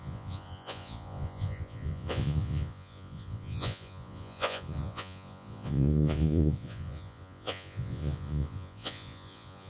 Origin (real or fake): fake